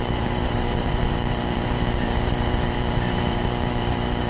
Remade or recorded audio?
remade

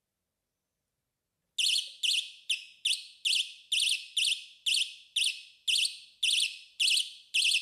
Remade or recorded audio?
recorded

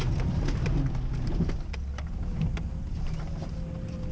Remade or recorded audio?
recorded